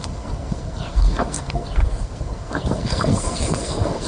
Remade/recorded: remade